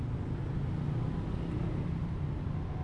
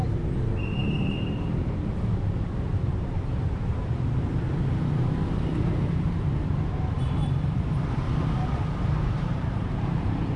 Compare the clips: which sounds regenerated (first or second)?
second